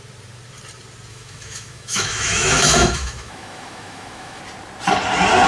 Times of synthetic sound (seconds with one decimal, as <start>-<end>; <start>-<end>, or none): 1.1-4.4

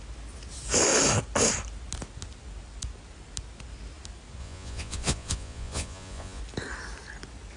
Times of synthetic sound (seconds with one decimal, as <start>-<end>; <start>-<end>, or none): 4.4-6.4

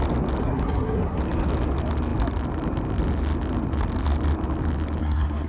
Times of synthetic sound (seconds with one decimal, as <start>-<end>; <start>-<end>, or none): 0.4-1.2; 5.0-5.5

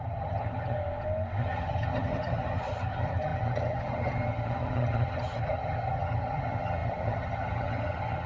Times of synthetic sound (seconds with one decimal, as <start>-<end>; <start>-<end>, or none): 0.0-0.8; 1.4-8.3